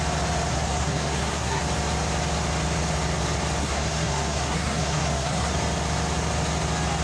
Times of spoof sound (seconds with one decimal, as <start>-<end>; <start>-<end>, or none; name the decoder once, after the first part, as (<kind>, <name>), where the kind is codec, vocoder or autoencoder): 0.5-1.6 (codec, SNAC); 3.6-5.5

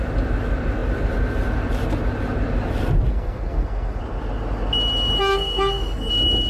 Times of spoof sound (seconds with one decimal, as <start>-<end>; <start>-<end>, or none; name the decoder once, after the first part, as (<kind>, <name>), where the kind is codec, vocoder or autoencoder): 3.1-4.0 (codec, SNAC); 5.3-6.1

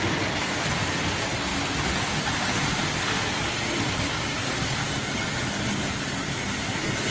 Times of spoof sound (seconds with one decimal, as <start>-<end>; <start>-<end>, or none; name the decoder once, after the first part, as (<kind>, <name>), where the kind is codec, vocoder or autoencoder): none

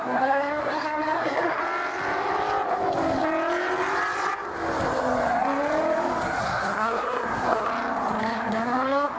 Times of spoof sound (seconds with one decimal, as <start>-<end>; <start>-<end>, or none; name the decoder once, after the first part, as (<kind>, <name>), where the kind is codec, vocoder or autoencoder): 0.0-1.6 (codec, SNAC); 6.4-7.7; 8.2-9.2

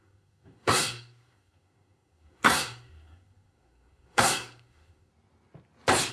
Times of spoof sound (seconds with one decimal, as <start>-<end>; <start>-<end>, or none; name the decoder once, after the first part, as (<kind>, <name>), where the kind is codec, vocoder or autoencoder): 0.0-5.1 (codec, SNAC)

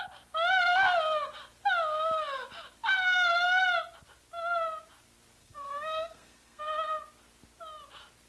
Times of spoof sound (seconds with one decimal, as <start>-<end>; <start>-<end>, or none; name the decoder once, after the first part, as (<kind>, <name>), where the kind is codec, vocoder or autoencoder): 5.4-6.6 (codec, SNAC)

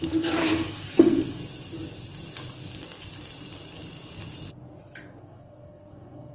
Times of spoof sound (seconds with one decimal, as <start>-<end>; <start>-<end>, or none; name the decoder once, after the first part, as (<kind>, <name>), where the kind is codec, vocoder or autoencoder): 0.0-1.4 (codec, SNAC); 5.2-6.3